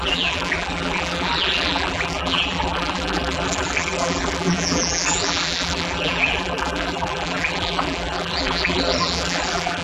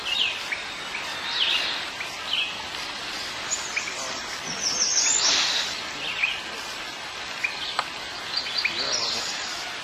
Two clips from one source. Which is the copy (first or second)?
first